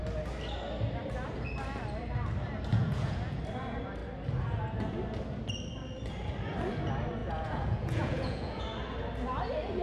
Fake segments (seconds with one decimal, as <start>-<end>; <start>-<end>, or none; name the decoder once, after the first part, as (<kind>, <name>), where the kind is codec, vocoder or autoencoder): 2.7-3.4 (vocoder, Vocos); 7.2-8.6